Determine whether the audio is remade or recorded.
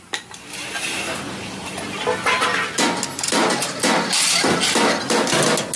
recorded